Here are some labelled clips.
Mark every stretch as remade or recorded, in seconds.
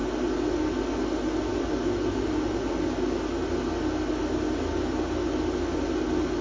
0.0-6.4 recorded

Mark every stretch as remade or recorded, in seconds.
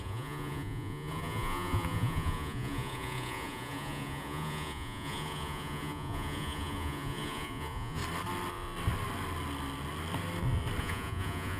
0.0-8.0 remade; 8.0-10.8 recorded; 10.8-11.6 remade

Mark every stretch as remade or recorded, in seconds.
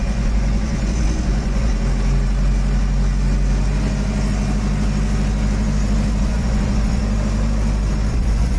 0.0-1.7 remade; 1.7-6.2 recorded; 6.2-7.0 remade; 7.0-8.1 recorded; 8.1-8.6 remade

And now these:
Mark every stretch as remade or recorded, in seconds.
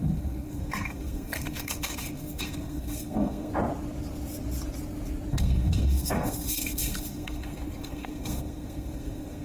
0.0-3.5 remade; 3.5-5.3 recorded; 5.3-9.4 remade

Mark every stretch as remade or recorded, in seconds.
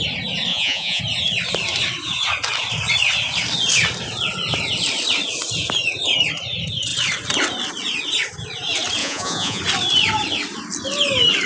0.0-0.5 recorded; 0.5-1.0 remade; 1.0-9.0 recorded; 9.0-9.6 remade; 9.6-11.5 recorded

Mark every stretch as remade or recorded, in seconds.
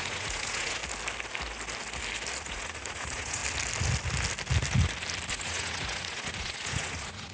0.0-0.8 remade; 0.8-2.4 recorded; 2.4-3.4 remade; 3.4-5.3 recorded; 5.3-7.3 remade